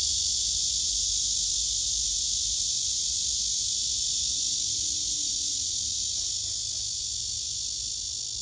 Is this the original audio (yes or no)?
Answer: yes